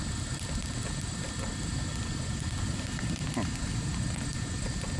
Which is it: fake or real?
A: real